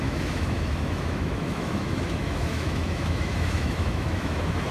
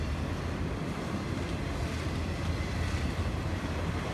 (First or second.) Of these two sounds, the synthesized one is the first